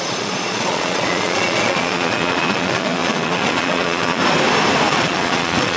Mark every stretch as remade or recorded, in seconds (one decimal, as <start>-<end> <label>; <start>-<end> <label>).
0.0-4.2 remade; 4.2-4.9 recorded; 4.9-5.8 remade